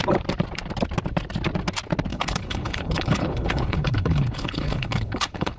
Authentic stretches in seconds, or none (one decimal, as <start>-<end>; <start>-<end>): 0.0-2.1